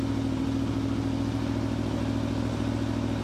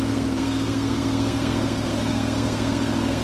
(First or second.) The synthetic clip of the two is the second